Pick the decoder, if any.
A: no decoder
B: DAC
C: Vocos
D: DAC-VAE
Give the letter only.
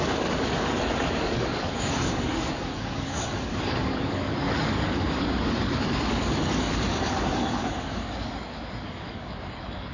B